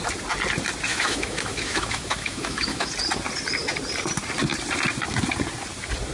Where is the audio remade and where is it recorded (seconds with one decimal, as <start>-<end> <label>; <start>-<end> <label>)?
0.0-0.9 recorded; 0.9-2.9 remade; 2.9-6.1 recorded